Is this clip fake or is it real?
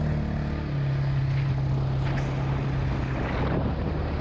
real